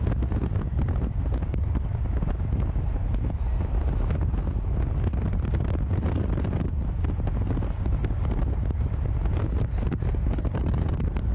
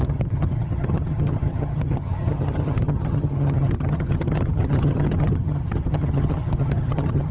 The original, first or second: first